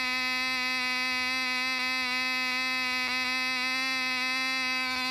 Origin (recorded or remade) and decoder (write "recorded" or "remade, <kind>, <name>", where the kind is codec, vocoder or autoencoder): recorded